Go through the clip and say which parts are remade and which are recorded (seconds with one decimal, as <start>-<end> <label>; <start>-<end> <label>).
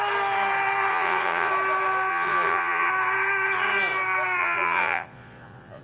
0.0-0.9 recorded; 0.9-1.5 remade; 1.5-2.1 recorded; 2.1-2.9 remade; 2.9-4.4 recorded; 4.4-5.8 remade